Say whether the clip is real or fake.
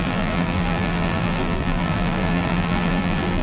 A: fake